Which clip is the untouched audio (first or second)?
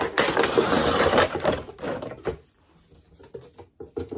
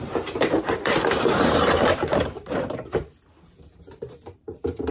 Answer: first